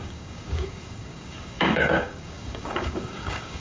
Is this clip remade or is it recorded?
remade